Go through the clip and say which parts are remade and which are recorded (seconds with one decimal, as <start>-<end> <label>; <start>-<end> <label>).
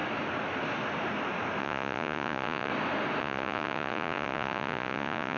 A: 0.0-1.6 recorded; 1.6-2.7 remade; 2.7-3.2 recorded; 3.2-5.4 remade